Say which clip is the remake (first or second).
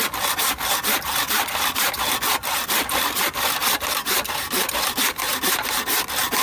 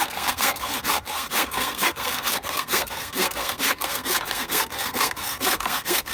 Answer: second